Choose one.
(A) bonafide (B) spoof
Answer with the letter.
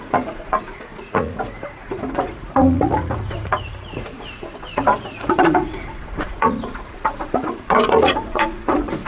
B